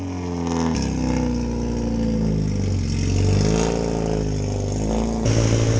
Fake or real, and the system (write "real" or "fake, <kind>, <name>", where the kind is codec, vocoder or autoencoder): real